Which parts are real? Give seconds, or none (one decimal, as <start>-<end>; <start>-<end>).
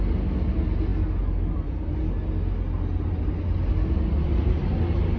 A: 0.0-5.2